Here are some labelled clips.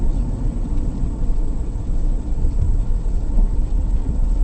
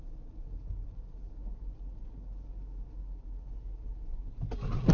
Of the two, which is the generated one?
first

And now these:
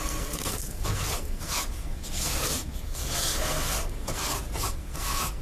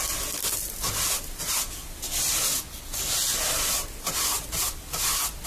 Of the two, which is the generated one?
first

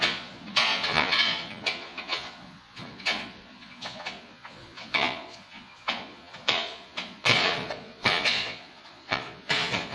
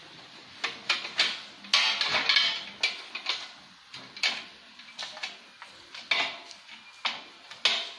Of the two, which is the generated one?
first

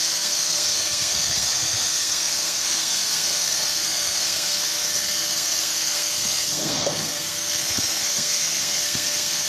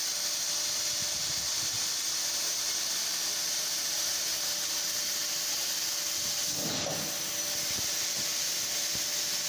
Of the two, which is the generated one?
first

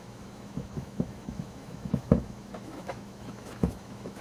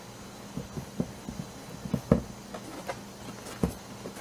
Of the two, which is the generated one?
first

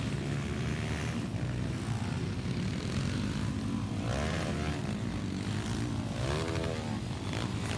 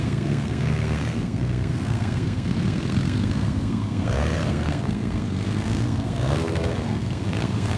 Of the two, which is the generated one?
second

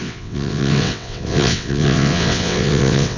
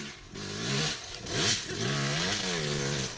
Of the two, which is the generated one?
first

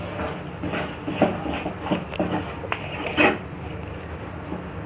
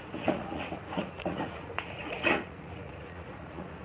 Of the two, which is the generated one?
second